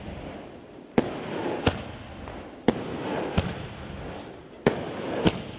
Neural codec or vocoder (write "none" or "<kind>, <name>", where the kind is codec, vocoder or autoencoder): none